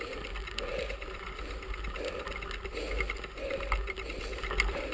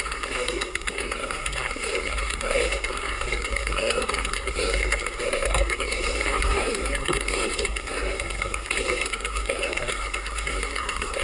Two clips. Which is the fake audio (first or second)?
second